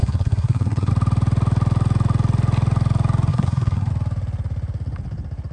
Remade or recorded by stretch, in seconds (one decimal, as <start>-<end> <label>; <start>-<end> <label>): 0.0-0.9 remade; 0.9-3.3 recorded; 3.3-3.9 remade; 3.9-5.5 recorded